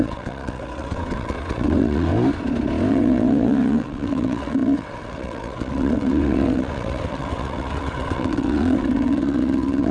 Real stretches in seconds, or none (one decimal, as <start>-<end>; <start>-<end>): 2.1-2.9